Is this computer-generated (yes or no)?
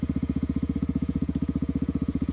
yes